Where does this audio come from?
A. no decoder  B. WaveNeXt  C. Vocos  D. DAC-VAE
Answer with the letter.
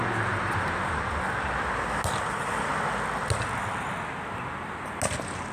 A